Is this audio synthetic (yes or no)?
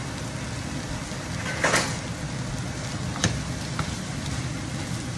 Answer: no